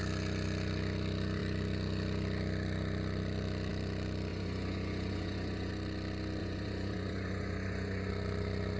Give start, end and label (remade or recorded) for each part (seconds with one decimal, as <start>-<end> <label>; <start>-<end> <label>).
0.0-4.3 recorded; 4.3-5.7 remade; 5.7-6.4 recorded; 6.4-8.1 remade; 8.1-8.8 recorded